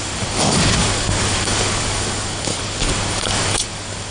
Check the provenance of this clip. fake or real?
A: fake